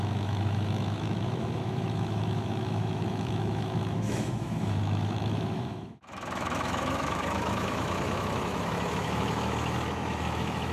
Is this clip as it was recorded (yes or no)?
no